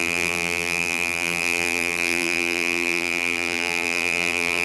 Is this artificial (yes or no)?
yes